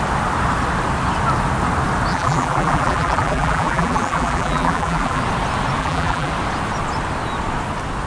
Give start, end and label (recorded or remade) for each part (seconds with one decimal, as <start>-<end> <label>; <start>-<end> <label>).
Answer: 0.0-2.1 recorded; 2.1-5.2 remade; 5.2-5.8 recorded; 5.8-6.3 remade; 6.3-8.1 recorded